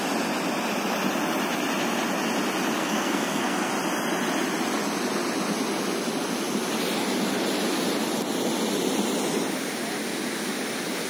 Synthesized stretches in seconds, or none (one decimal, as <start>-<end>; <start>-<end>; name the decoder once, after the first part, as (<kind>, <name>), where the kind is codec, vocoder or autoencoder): 2.8-3.7 (codec, SNAC)